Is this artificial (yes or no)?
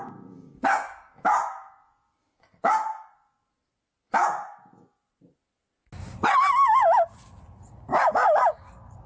no